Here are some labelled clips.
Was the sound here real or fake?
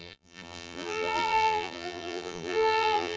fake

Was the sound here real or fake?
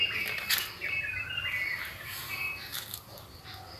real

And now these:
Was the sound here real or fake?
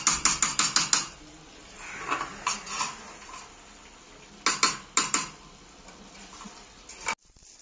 real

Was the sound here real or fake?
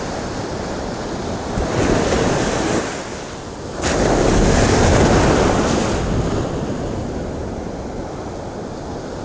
real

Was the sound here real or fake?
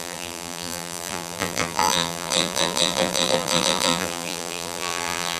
fake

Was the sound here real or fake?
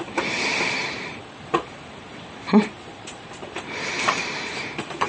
fake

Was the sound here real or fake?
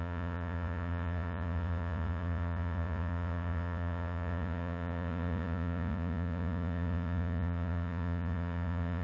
fake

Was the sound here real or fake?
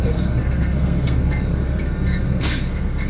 fake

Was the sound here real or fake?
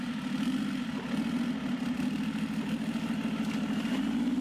real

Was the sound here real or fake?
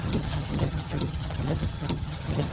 fake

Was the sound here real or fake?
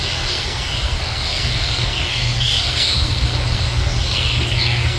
fake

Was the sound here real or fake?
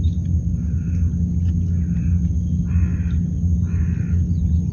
real